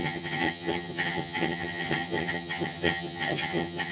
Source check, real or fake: fake